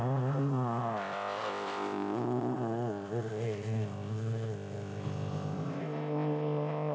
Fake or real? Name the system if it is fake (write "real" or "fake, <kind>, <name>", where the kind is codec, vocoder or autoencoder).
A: fake, codec, ZipCodec